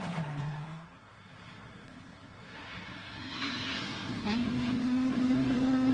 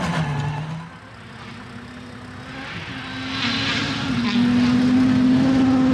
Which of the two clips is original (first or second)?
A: second